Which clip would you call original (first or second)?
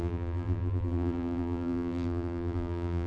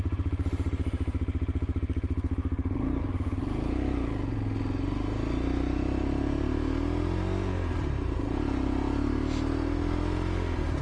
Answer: second